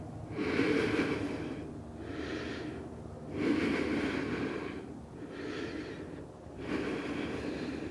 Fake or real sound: real